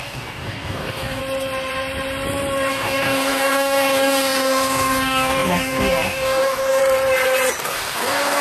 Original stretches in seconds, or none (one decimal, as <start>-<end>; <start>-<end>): 1.2-2.7; 6.8-7.6